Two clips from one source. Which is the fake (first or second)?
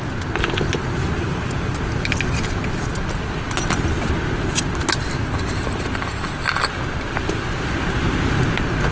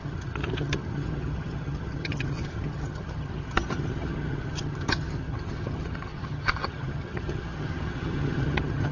second